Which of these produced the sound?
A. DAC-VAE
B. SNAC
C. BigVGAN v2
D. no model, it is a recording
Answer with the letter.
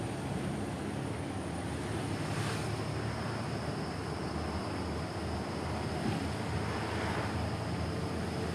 D